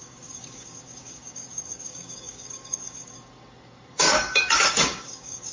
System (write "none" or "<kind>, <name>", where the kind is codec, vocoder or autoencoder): codec, DAC